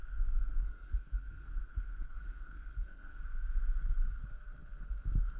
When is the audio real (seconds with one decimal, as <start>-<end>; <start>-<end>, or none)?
3.2-5.4